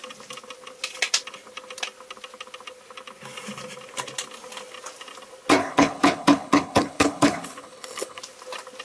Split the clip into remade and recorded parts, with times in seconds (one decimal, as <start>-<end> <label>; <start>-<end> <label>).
0.0-5.6 recorded; 5.6-8.2 remade; 8.2-8.8 recorded